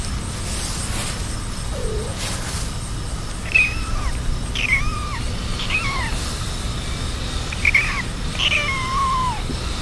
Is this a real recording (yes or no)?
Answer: yes